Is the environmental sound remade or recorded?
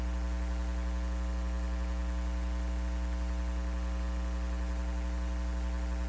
recorded